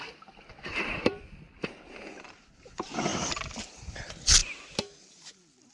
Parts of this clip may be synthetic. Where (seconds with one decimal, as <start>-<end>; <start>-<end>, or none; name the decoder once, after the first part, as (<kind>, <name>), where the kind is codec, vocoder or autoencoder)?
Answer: 0.0-3.1 (vocoder, BigVGAN v2); 3.7-4.4